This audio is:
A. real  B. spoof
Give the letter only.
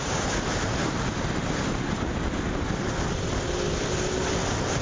A